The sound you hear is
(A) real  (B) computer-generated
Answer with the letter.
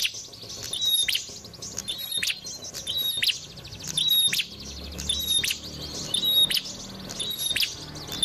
A